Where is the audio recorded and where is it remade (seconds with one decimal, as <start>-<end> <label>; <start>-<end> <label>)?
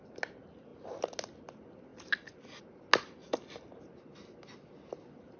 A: 0.0-3.2 recorded; 3.2-3.8 remade; 3.8-5.4 recorded